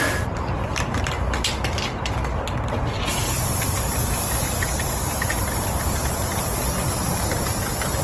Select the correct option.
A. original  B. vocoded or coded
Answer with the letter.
A